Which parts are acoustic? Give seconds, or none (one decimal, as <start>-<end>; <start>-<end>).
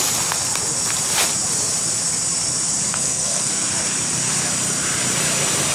0.0-2.9; 3.5-5.7